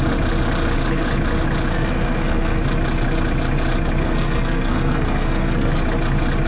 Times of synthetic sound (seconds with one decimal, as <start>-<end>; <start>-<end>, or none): 1.7-2.6; 4.0-5.7